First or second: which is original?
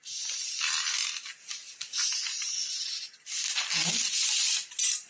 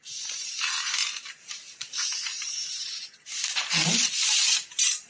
first